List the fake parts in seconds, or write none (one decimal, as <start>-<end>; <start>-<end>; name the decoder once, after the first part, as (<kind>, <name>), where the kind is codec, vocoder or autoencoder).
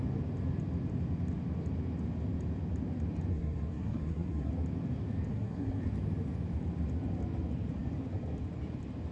3.3-4.5 (codec, SNAC); 5.3-5.8